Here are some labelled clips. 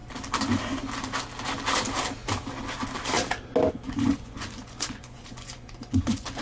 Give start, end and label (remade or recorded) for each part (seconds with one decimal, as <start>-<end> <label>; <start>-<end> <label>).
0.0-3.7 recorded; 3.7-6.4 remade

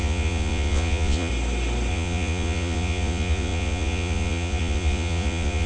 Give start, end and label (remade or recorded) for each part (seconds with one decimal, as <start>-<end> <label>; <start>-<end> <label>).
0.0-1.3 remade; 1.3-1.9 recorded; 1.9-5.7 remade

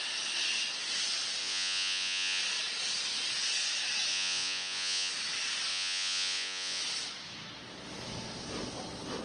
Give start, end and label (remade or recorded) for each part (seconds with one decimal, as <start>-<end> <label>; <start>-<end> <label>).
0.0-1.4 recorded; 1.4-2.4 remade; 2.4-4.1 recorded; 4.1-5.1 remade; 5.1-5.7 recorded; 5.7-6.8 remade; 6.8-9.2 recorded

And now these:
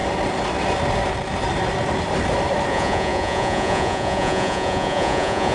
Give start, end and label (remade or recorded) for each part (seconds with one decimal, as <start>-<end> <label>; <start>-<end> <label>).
0.0-2.7 recorded; 2.7-5.5 remade

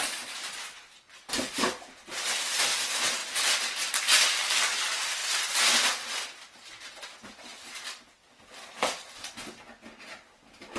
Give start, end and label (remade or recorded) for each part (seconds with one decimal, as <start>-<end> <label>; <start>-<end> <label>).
0.0-10.8 recorded

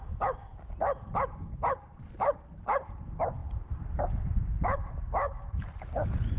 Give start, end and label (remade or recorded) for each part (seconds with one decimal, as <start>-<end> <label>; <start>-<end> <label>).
0.0-6.4 recorded

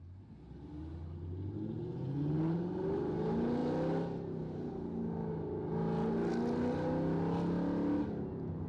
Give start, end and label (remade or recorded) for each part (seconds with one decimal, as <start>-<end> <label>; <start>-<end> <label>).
0.0-8.7 recorded